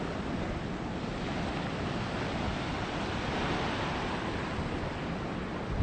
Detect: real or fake real